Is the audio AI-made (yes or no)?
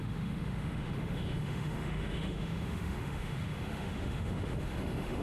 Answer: yes